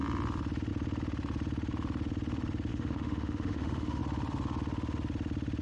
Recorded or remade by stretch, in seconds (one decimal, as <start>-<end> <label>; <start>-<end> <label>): 0.0-2.7 recorded; 2.7-4.0 remade; 4.0-5.6 recorded